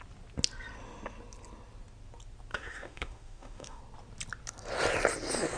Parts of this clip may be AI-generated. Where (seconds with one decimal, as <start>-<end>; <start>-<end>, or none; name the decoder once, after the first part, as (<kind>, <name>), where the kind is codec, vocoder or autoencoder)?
2.5-3.8 (autoencoder, DAC-VAE)